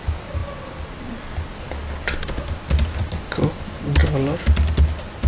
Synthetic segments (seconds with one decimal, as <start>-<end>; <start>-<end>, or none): none